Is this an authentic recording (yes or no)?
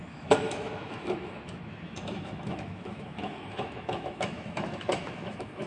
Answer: no